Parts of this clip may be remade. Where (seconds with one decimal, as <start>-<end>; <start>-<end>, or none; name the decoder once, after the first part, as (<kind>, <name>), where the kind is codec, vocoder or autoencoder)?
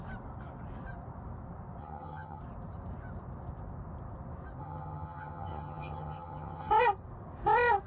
1.8-2.4 (vocoder, HiFi-GAN); 4.6-6.7